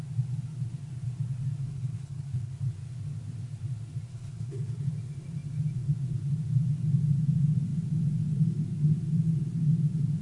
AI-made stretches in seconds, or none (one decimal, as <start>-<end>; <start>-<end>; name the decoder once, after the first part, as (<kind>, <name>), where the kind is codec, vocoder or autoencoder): 1.7-2.5 (codec, HILCodec); 4.1-4.9